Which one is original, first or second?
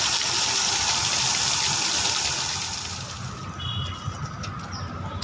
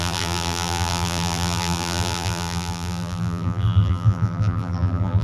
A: first